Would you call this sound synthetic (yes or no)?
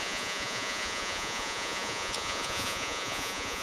yes